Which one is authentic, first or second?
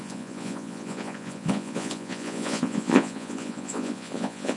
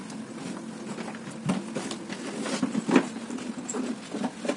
second